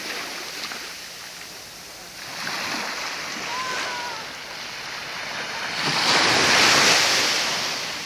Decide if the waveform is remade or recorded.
recorded